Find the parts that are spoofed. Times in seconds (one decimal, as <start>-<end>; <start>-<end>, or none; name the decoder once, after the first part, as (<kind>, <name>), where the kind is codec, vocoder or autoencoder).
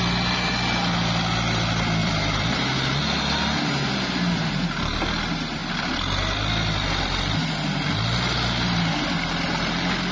2.0-2.5 (vocoder, BigVGAN v2)